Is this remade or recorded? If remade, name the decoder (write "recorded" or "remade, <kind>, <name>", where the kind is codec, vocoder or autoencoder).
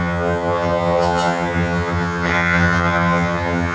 remade, vocoder, HiFi-GAN